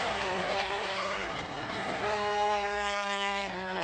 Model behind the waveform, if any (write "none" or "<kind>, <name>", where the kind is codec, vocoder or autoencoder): codec, SNAC